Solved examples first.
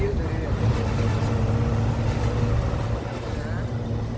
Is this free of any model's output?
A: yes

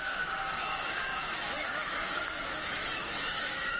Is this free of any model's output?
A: no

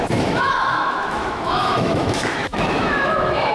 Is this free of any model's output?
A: no